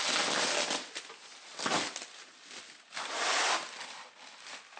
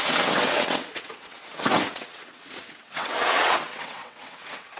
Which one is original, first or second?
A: first